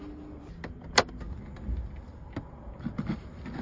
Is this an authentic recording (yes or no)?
yes